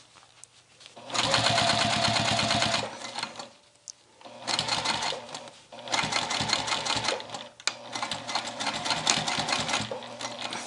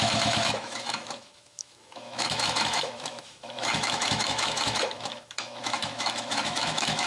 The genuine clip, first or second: first